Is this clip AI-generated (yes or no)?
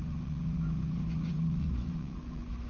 yes